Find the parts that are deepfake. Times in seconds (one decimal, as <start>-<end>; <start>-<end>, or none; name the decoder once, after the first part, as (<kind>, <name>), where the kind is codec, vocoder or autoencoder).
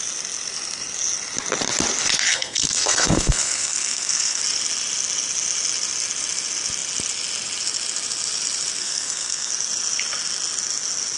2.3-4.4 (codec, SNAC); 8.8-9.5